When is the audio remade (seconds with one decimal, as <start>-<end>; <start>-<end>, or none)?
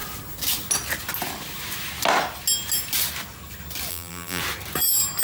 3.9-4.4